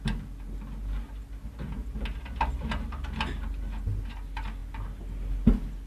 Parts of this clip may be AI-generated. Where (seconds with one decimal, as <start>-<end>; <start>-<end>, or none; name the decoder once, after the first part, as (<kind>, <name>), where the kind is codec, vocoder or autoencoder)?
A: none